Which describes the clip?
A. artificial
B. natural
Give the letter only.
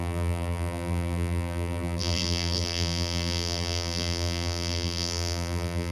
A